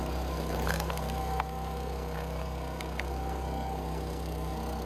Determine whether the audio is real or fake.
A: fake